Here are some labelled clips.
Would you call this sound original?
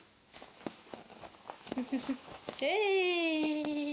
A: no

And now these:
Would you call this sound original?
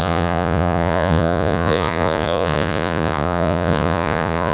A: no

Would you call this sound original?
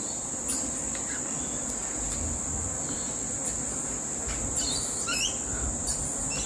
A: yes